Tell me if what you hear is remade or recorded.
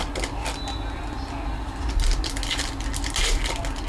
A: recorded